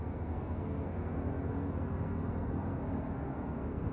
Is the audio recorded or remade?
remade